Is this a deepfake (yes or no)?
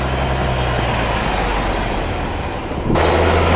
no